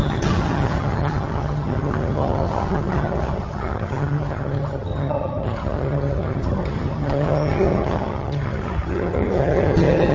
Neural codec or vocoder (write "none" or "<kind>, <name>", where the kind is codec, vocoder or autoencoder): vocoder, HiFi-GAN